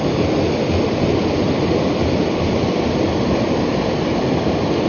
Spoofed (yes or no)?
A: no